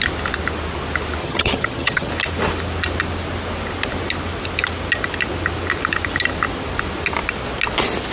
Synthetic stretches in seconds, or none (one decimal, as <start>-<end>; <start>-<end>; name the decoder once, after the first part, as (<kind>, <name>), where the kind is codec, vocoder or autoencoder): 1.2-2.1 (vocoder, HiFi-GAN)

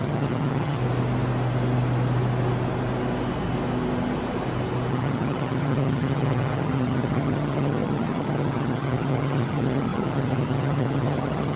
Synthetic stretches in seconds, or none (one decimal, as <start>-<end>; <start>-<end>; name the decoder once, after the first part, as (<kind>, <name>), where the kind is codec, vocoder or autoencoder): 0.0-0.8 (vocoder, HiFi-GAN); 4.9-11.6

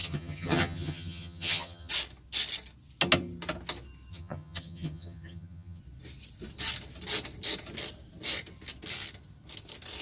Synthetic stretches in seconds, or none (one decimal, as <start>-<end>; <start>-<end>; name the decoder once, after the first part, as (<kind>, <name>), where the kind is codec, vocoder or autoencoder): 0.0-1.9 (vocoder, HiFi-GAN); 4.1-5.8